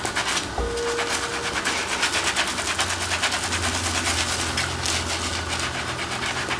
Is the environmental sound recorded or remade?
recorded